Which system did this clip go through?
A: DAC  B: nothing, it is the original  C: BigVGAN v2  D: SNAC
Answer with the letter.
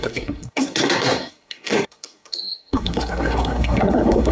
D